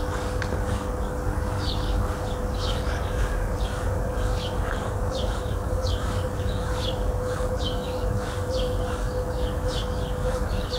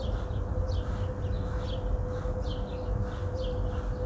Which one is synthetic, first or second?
first